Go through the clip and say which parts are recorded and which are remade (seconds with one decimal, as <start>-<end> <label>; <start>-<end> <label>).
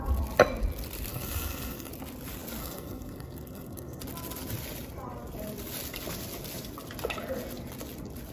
0.0-1.1 recorded; 1.1-1.9 remade; 1.9-2.6 recorded; 2.6-4.0 remade; 4.0-8.3 recorded